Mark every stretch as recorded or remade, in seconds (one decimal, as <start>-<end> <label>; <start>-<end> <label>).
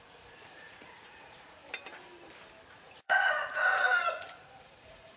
0.0-1.6 remade; 1.6-2.7 recorded; 2.7-5.2 remade